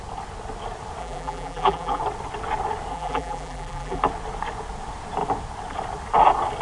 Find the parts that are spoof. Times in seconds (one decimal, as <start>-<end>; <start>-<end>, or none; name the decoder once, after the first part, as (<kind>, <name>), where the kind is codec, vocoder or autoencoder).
1.0-2.0 (vocoder, BigVGAN v2); 2.9-4.0